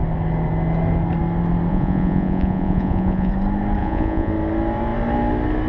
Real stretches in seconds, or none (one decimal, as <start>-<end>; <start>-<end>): 0.0-1.7; 3.3-3.8; 4.3-5.7